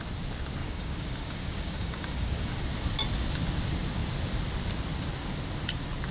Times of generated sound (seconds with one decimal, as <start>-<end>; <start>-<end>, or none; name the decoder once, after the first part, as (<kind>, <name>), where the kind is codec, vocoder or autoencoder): 0.6-2.5 (codec, DAC)